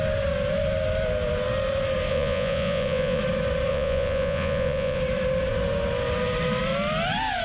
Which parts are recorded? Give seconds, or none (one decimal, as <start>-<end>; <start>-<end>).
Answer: 0.0-2.1; 3.2-3.7; 5.0-7.4